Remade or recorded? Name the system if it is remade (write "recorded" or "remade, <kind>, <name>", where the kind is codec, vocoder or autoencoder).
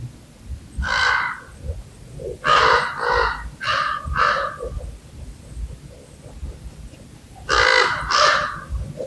recorded